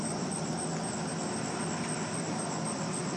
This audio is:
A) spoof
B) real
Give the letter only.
B